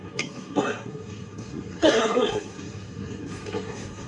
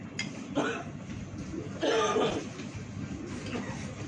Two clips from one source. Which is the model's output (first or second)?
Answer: first